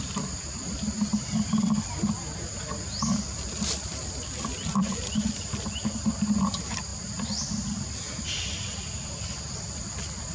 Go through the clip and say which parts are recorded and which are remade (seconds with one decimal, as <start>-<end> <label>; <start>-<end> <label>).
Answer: 0.0-3.9 remade; 3.9-4.8 recorded; 4.8-10.3 remade